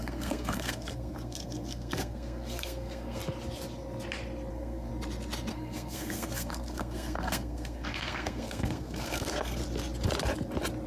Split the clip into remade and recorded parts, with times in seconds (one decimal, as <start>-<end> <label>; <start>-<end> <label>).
0.0-3.2 remade; 3.2-4.5 recorded; 4.5-4.9 remade; 4.9-5.5 recorded; 5.5-9.6 remade; 9.6-10.9 recorded